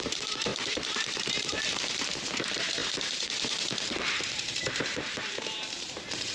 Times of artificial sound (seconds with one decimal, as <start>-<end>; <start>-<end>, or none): 0.0-6.3